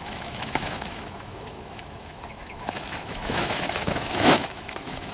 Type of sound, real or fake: fake